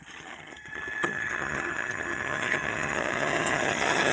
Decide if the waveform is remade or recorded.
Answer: remade